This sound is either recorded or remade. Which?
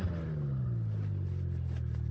recorded